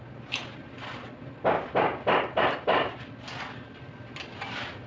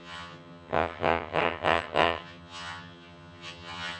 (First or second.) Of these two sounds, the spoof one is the second